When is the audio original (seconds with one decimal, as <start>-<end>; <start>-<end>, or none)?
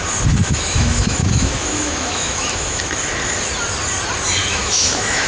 0.0-0.4; 2.8-4.5